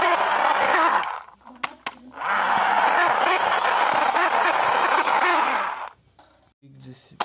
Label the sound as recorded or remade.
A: recorded